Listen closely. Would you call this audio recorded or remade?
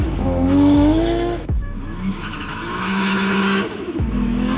remade